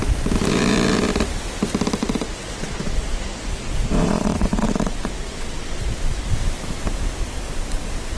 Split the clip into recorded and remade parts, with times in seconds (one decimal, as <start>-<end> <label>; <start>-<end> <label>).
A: 0.0-2.0 recorded; 2.0-6.3 remade; 6.3-8.2 recorded